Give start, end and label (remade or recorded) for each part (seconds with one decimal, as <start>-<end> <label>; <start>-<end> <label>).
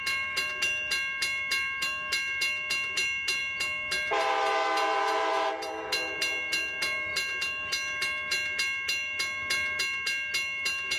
0.0-11.0 recorded